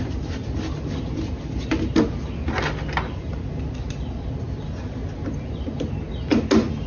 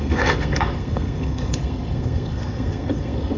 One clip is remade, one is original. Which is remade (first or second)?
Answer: second